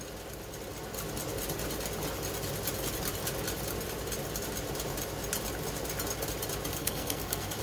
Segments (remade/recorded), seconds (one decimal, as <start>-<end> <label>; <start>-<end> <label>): 0.0-6.7 recorded; 6.7-7.6 remade